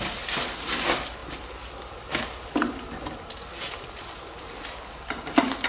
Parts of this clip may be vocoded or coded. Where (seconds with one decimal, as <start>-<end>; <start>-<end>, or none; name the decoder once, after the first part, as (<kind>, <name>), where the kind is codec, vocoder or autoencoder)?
none